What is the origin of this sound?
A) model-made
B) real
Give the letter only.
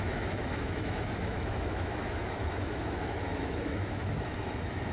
A